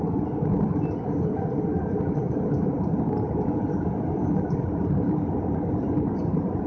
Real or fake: real